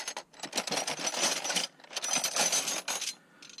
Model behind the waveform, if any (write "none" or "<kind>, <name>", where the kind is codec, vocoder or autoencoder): none